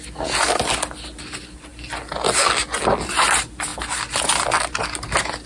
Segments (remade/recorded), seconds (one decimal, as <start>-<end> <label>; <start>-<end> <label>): 0.0-5.5 recorded